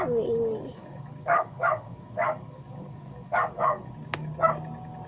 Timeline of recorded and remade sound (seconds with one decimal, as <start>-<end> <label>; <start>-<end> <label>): 0.0-0.8 recorded; 0.8-3.9 remade; 3.9-5.1 recorded